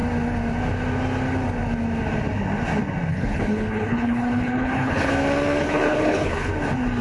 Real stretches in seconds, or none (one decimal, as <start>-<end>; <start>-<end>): 0.0-3.1; 5.1-5.6; 6.5-7.0